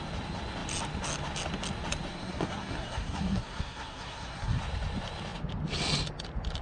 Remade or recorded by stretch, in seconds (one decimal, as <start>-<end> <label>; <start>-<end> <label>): 0.0-2.1 recorded; 2.1-4.6 remade; 4.6-6.6 recorded

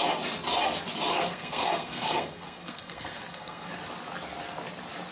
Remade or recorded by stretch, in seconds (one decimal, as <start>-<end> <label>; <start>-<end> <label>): 0.0-1.1 recorded; 1.1-3.7 remade; 3.7-5.1 recorded